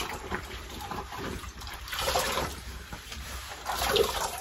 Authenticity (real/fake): fake